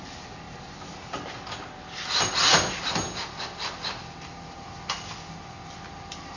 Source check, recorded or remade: recorded